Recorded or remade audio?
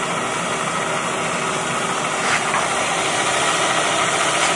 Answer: recorded